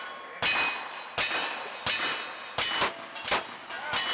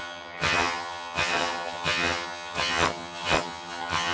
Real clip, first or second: first